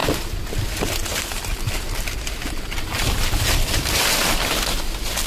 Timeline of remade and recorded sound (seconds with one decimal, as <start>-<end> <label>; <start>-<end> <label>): 0.0-1.1 recorded; 1.1-4.2 remade; 4.2-5.3 recorded